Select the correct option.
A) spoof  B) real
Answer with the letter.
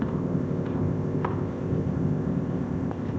A